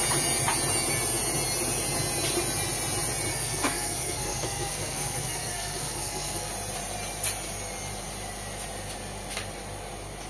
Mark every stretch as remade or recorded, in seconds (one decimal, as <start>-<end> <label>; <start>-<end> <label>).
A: 0.0-3.3 recorded; 3.3-6.5 remade; 6.5-10.3 recorded